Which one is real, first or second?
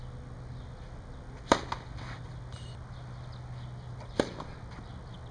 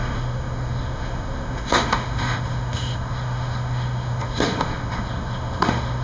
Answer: first